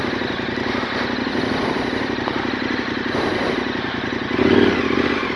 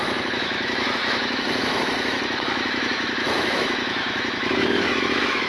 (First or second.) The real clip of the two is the first